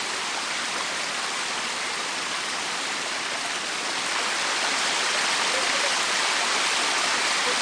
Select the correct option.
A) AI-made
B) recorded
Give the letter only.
B